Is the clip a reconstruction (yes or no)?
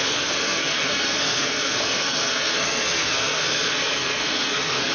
yes